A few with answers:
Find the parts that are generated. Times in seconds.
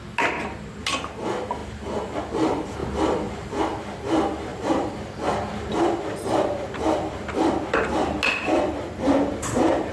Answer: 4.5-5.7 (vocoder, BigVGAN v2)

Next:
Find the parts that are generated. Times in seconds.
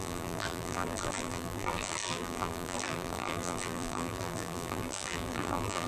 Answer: 0.0-5.9 (vocoder, BigVGAN v2)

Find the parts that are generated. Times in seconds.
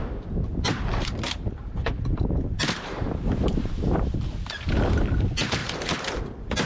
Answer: 0.5-4.5 (vocoder, BigVGAN v2); 5.6-6.2